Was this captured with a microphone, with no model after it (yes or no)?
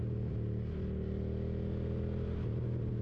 yes